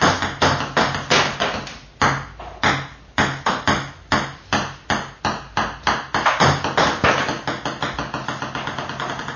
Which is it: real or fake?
real